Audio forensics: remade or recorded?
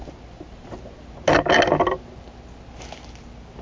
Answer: recorded